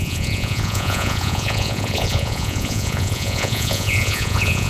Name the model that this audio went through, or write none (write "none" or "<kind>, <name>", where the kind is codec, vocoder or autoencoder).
vocoder, Vocos